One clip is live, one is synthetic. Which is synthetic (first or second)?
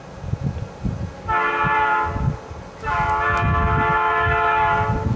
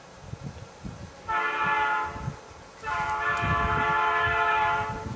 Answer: second